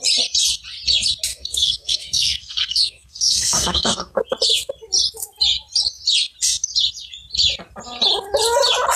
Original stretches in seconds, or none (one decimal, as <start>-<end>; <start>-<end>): 0.0-1.3; 4.2-9.0